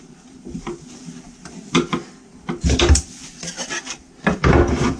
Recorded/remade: remade